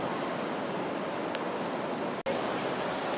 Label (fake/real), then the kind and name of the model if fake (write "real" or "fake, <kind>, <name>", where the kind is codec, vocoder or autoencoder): real